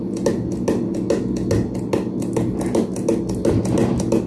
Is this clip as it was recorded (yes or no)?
yes